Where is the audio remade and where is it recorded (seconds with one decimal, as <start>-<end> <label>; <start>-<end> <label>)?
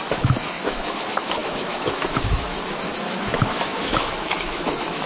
0.0-5.1 remade